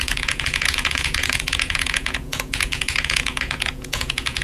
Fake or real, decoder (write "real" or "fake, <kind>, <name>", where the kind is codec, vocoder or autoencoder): fake, vocoder, Vocos